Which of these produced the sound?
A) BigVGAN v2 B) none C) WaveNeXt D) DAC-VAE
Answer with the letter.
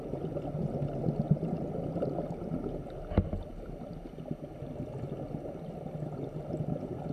B